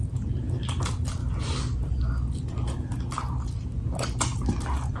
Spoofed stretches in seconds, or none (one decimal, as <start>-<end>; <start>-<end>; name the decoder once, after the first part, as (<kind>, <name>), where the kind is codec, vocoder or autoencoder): none